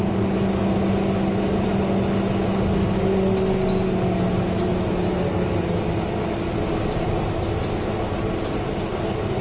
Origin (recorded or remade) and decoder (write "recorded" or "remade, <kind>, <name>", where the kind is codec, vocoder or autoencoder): recorded